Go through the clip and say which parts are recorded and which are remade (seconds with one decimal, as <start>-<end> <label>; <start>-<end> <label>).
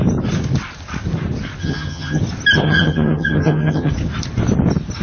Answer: 0.0-1.6 recorded; 1.6-2.2 remade; 2.2-2.6 recorded; 2.6-3.9 remade; 3.9-5.0 recorded